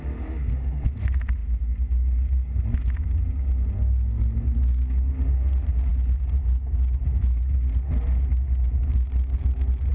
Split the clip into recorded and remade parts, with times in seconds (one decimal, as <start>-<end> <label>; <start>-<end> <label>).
0.0-9.9 recorded